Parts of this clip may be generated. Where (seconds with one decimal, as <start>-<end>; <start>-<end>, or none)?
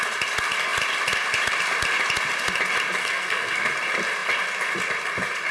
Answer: 3.0-3.7